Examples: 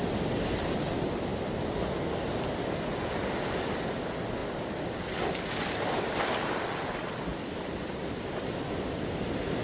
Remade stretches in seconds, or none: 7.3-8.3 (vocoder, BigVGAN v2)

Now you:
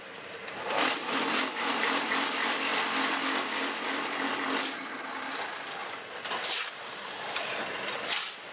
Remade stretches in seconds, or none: 0.0-2.7 (vocoder, BigVGAN v2); 5.2-8.5

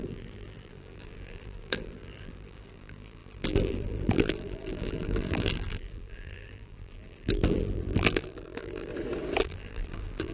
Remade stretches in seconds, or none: 0.0-8.9 (vocoder, BigVGAN v2); 9.4-10.3

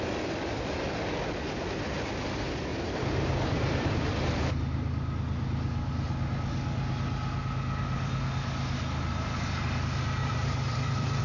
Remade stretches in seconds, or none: 2.7-4.1 (vocoder, BigVGAN v2); 10.2-11.2

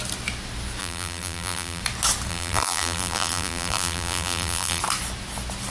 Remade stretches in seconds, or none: 0.8-1.8 (vocoder, BigVGAN v2); 2.3-4.8

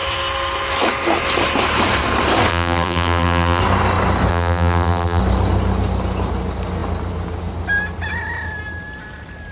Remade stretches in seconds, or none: 2.5-3.6 (vocoder, BigVGAN v2); 4.3-5.2